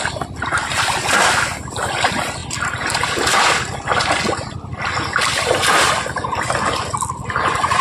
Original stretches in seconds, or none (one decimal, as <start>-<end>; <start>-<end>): 0.0-7.8